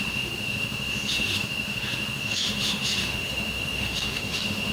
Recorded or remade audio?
remade